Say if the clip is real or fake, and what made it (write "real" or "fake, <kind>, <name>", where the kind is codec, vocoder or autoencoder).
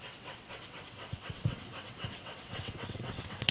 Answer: fake, vocoder, WaveNeXt